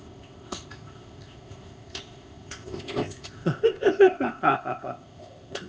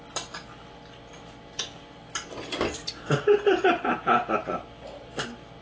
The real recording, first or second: second